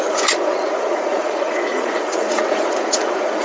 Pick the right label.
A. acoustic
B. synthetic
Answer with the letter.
B